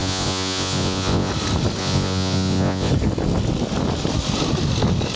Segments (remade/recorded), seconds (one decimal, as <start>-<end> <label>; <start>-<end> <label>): 0.0-1.3 remade; 1.3-1.8 recorded; 1.8-2.9 remade; 2.9-5.2 recorded